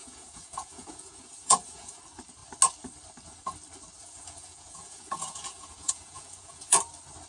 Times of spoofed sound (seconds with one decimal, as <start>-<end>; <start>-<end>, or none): 0.0-2.0; 4.0-6.8